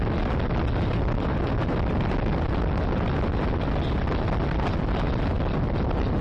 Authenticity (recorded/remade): recorded